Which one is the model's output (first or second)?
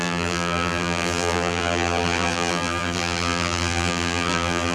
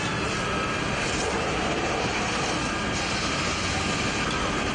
first